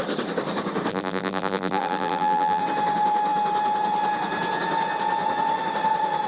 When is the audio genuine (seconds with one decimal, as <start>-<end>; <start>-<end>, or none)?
0.0-0.9; 2.6-6.3

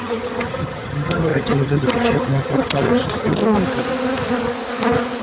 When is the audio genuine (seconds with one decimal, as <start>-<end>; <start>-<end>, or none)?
3.4-5.2

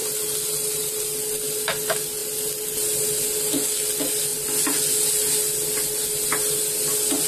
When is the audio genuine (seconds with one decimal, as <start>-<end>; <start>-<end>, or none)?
0.9-4.3; 6.6-7.3

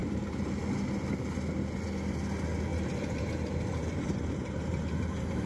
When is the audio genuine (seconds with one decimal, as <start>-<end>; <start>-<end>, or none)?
0.6-2.7

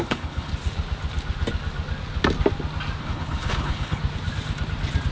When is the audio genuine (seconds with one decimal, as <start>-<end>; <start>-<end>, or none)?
0.5-3.0; 4.0-5.1